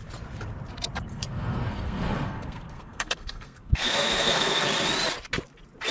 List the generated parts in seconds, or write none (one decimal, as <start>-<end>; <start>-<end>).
1.1-4.6